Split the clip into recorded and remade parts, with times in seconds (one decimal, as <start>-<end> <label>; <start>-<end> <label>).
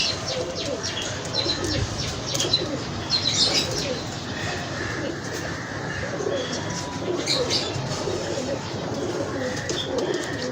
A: 0.0-3.8 recorded; 3.8-5.8 remade; 5.8-10.5 recorded